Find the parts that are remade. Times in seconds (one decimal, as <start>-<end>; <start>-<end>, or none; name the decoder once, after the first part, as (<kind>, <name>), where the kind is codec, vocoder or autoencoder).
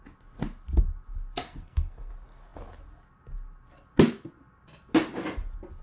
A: 1.4-2.1 (codec, SNAC)